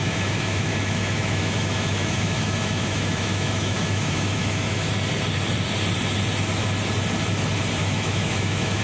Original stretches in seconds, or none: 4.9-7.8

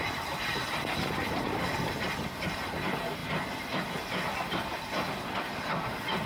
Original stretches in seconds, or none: 0.0-6.3

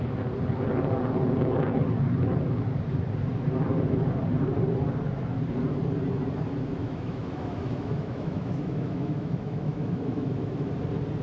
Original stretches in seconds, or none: 0.0-6.8; 10.7-11.2

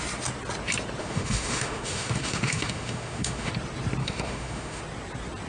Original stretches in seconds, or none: 0.0-1.0; 3.5-4.0; 4.8-5.5

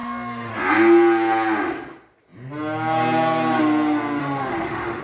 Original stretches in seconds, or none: 0.5-4.2

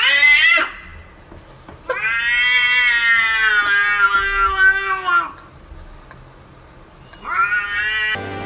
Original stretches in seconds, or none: 0.0-8.5

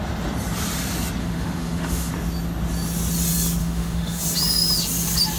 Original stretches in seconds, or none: 0.0-1.2; 2.1-3.6; 4.2-5.4